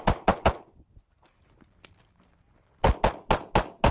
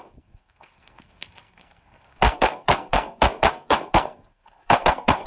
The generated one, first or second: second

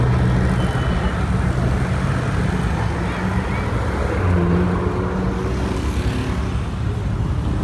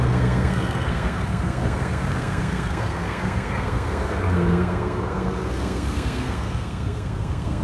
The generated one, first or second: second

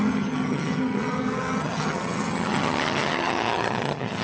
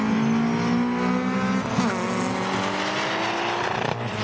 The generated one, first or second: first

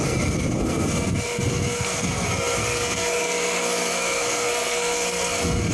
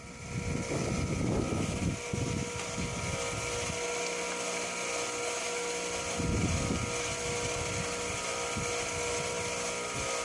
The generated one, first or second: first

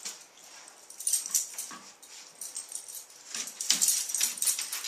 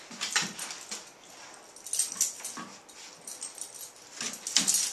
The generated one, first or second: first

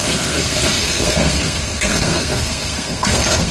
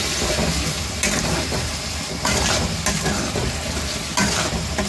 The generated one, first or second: first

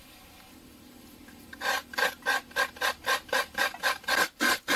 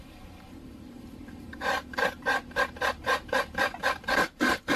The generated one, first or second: second